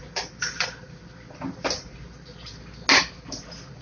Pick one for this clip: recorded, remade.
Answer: recorded